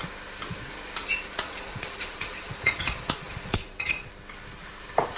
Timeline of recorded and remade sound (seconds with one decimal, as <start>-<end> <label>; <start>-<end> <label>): 0.0-1.0 recorded; 1.0-4.1 remade; 4.1-5.2 recorded